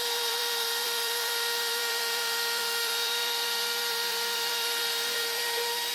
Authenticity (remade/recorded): remade